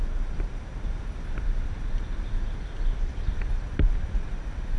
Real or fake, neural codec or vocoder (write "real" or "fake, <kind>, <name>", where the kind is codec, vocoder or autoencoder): fake, vocoder, BigVGAN v2